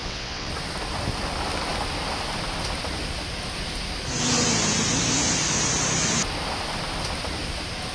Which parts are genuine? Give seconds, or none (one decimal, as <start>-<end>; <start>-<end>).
0.5-7.9